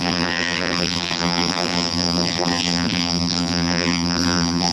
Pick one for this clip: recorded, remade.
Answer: remade